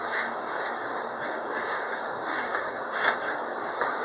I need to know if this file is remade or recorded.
remade